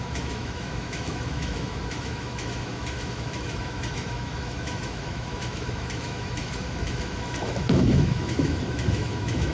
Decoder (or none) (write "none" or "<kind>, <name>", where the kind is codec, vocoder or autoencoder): autoencoder, DAC-VAE